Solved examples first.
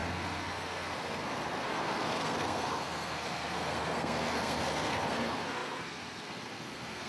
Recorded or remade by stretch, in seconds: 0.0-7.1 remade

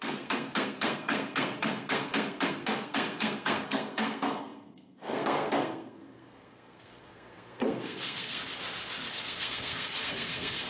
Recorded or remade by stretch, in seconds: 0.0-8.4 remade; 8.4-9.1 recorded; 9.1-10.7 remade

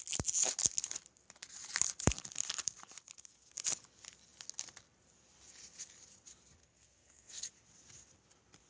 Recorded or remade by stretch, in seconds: 0.0-6.6 recorded; 6.6-7.5 remade; 7.5-8.7 recorded

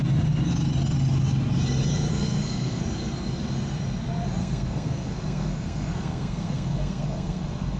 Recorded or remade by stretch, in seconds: 0.0-2.1 recorded; 2.1-2.8 remade; 2.8-4.4 recorded; 4.4-7.8 remade

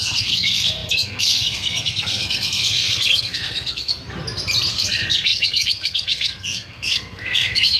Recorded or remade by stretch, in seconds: 0.0-4.0 remade; 4.0-4.7 recorded; 4.7-7.8 remade